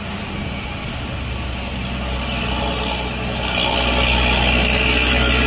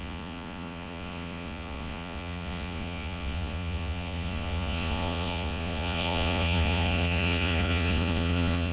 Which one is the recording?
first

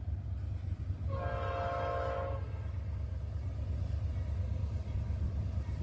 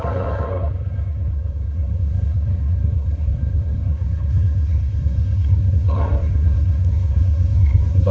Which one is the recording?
first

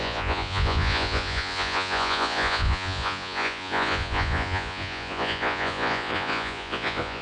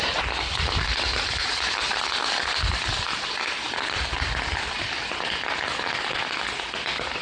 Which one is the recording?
second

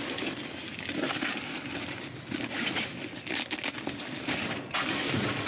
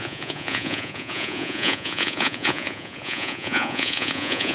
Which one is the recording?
first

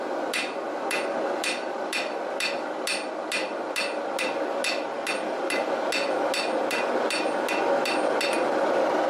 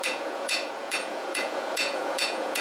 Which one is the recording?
first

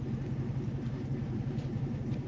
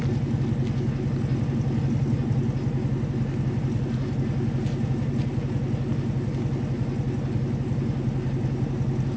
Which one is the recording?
second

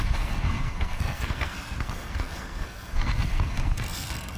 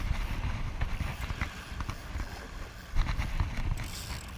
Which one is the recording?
second